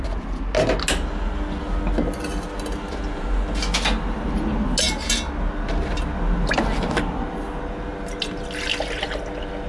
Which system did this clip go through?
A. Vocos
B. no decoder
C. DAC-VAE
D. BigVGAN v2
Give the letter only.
B